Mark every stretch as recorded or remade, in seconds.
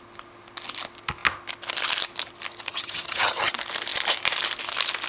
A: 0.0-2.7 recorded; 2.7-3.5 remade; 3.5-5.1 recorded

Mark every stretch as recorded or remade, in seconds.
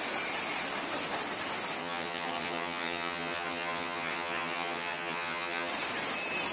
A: 0.0-1.8 recorded; 1.8-5.7 remade; 5.7-6.5 recorded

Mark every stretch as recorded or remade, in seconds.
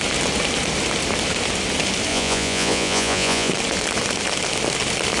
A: 0.0-2.1 recorded; 2.1-3.5 remade; 3.5-5.2 recorded